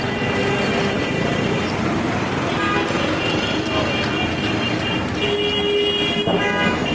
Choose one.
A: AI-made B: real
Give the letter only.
B